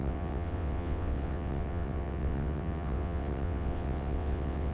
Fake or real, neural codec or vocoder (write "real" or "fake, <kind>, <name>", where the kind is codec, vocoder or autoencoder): fake, vocoder, WaveNeXt